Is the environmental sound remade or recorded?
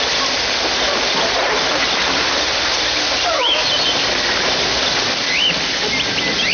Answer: recorded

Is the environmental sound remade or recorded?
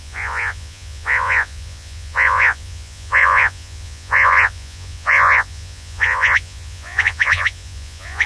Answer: remade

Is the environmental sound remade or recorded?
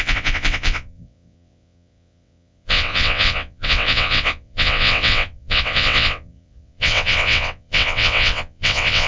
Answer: remade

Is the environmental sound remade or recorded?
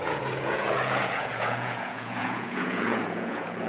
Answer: remade